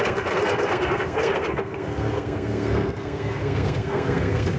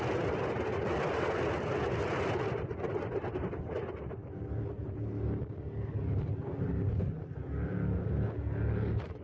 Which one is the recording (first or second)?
second